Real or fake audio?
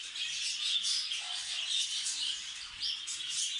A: real